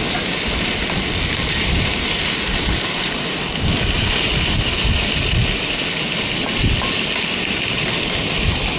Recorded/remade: recorded